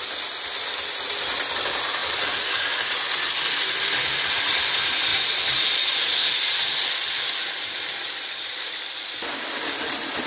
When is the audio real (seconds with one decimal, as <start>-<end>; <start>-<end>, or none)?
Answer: 0.0-10.3